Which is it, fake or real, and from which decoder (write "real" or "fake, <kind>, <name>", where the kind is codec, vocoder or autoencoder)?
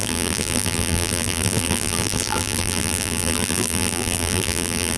fake, vocoder, BigVGAN v2